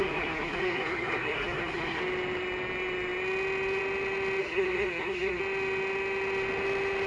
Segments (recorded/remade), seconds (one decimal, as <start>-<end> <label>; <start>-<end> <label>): 0.0-2.0 remade; 2.0-4.4 recorded; 4.4-5.4 remade; 5.4-7.1 recorded